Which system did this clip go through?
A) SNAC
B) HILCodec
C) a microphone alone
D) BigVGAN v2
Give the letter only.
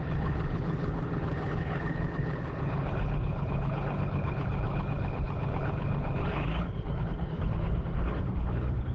B